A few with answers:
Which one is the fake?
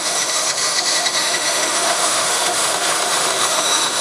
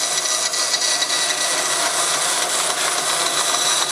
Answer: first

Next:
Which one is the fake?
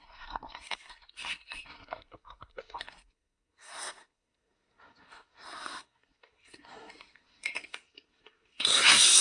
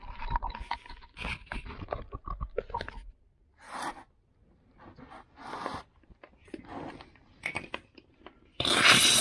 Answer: first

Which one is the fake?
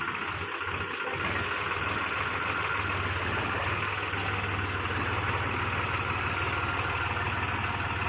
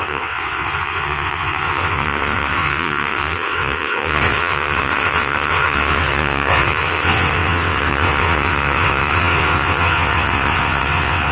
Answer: second